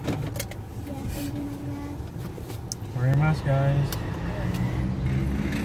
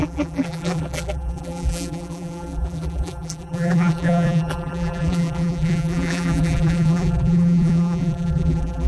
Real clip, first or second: first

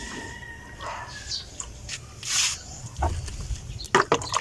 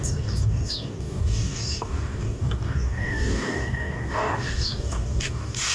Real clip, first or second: first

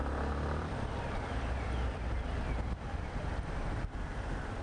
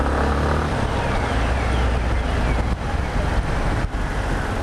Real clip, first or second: second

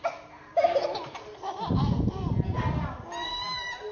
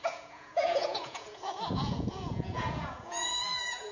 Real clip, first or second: first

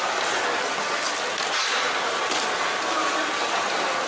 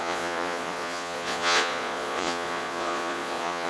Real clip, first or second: first